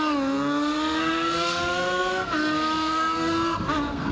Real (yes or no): no